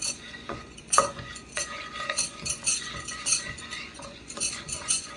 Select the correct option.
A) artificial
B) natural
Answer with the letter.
A